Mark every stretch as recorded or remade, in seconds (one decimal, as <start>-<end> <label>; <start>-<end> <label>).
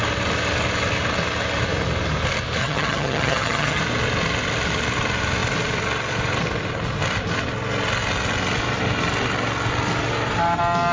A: 0.0-2.6 recorded; 2.6-3.8 remade; 3.8-10.9 recorded